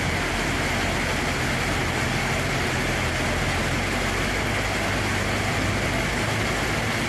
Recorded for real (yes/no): yes